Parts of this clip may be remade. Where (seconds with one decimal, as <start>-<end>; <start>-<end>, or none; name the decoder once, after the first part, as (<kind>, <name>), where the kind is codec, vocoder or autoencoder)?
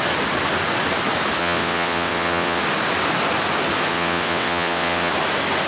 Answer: 1.4-2.6 (vocoder, WaveNeXt); 3.9-5.1